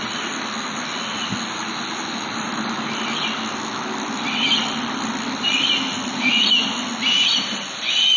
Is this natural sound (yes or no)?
yes